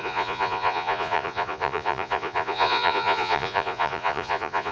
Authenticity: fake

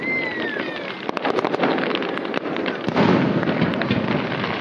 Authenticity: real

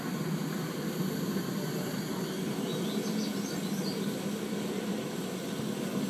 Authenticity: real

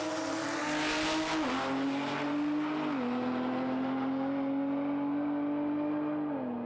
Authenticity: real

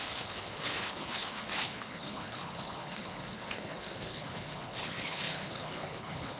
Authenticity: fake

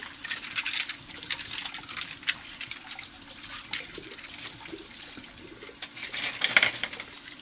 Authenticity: real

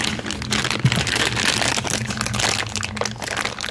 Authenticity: real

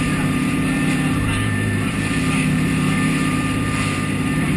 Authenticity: fake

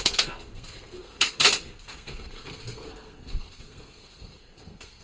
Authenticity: fake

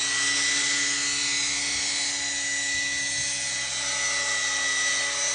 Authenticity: real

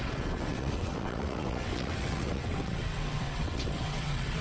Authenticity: fake